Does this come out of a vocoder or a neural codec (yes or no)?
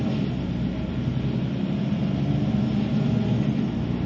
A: no